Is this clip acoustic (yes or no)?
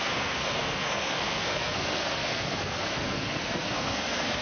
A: no